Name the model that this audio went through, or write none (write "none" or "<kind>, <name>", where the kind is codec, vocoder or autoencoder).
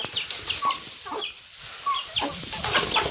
none